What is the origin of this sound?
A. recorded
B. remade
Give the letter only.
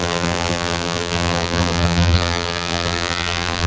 B